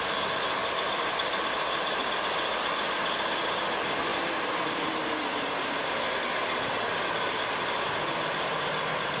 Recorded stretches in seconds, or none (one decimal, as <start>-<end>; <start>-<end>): 0.0-0.6; 2.1-4.1; 5.9-9.2